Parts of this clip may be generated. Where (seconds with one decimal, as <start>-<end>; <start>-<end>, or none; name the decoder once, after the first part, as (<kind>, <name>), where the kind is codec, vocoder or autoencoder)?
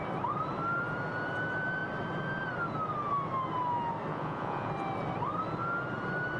4.1-4.7 (vocoder, Vocos)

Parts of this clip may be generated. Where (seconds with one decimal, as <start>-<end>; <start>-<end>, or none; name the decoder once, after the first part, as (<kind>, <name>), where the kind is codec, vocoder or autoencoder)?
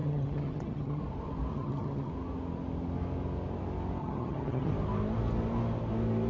0.0-1.0 (vocoder, HiFi-GAN); 1.5-2.1; 4.0-4.7